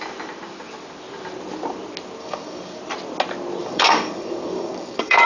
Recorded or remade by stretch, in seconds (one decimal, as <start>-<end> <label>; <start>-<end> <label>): 0.0-2.2 recorded; 2.2-2.8 remade; 2.8-3.6 recorded; 3.6-5.2 remade